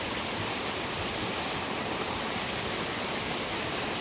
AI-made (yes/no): no